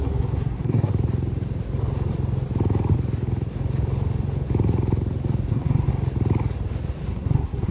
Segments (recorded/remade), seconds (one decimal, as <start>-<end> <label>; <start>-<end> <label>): 0.0-0.9 remade; 0.9-5.5 recorded; 5.5-5.9 remade; 5.9-7.1 recorded; 7.1-7.7 remade